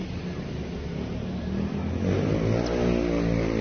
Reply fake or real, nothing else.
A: real